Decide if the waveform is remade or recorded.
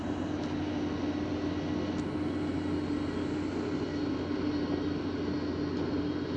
recorded